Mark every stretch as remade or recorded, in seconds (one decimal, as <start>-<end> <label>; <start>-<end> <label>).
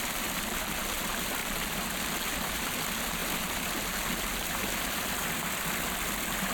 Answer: 0.0-1.4 recorded; 1.4-2.0 remade; 2.0-3.2 recorded; 3.2-5.1 remade; 5.1-6.5 recorded